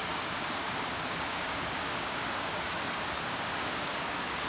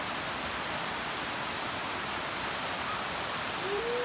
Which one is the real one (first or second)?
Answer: second